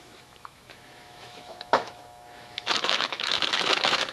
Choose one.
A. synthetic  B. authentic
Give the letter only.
A